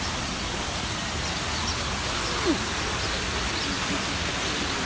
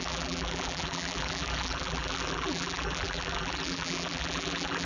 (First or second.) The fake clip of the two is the second